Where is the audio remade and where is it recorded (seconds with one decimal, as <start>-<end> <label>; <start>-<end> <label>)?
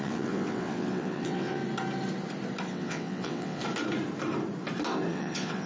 0.0-1.6 remade; 1.6-2.7 recorded; 2.7-3.6 remade; 3.6-5.1 recorded; 5.1-5.7 remade